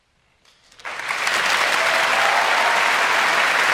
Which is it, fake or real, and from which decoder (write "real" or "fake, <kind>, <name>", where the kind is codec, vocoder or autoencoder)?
real